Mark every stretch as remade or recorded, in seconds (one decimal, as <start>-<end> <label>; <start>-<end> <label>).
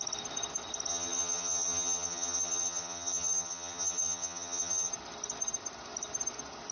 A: 0.0-0.9 recorded; 0.9-4.9 remade; 4.9-6.7 recorded